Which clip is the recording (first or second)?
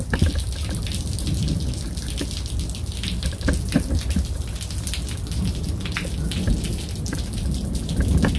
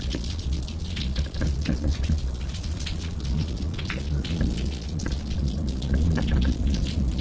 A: first